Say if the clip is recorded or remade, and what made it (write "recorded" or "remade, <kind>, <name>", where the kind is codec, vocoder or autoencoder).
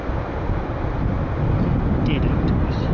recorded